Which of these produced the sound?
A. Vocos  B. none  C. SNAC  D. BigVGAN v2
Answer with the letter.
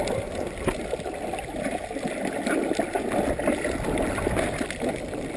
B